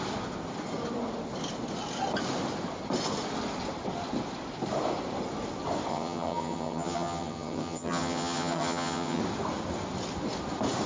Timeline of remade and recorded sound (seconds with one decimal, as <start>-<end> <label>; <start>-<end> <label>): 0.0-5.9 recorded; 5.9-9.2 remade; 9.2-10.9 recorded